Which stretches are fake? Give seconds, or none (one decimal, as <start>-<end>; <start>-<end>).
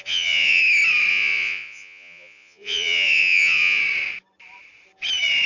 0.0-0.6; 1.1-3.8